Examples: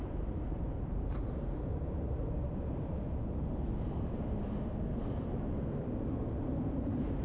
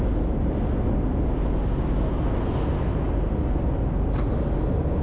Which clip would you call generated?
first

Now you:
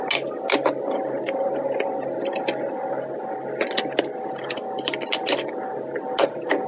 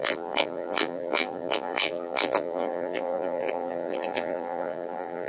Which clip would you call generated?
second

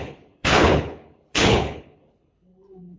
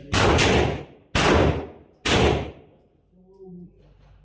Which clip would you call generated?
first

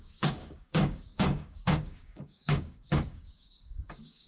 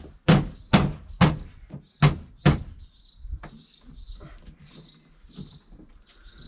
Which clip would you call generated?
first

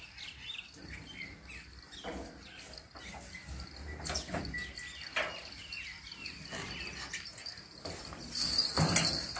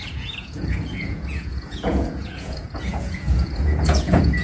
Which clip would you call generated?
second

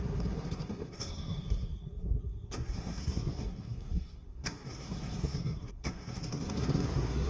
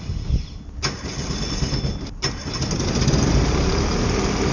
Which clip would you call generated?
first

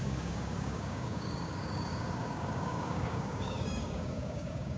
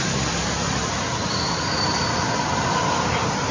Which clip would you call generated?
first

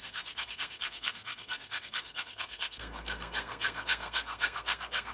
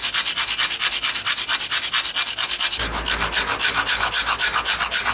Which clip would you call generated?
first